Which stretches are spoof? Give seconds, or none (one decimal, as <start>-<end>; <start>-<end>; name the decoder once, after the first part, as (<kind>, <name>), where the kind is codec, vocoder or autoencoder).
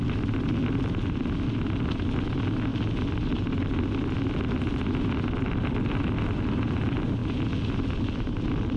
none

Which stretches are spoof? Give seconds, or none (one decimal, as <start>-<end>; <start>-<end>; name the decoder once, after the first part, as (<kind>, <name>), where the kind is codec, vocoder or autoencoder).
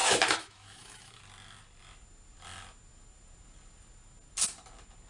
0.0-1.2 (autoencoder, DAC-VAE)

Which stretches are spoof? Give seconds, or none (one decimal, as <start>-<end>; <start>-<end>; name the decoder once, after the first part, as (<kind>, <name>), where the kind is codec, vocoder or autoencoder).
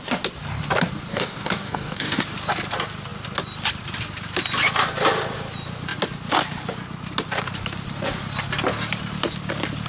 1.1-2.2 (codec, DAC)